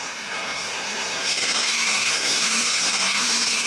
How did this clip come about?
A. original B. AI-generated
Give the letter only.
B